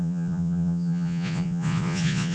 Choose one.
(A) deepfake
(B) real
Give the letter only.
A